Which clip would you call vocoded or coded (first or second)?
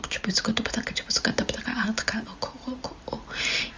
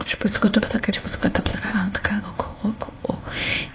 second